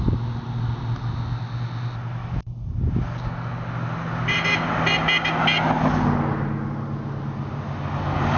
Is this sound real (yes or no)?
yes